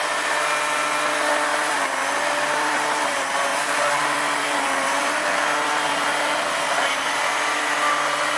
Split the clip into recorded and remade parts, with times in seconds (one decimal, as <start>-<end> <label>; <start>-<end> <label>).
0.0-1.5 recorded; 1.5-2.1 remade; 2.1-3.5 recorded; 3.5-5.9 remade; 5.9-8.4 recorded